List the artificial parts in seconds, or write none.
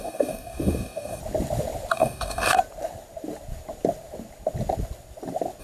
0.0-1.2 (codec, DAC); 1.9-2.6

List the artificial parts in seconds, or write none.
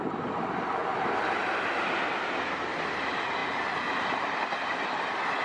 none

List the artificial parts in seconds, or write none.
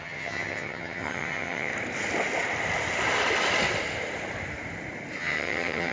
0.0-1.7 (vocoder, HiFi-GAN); 5.2-5.9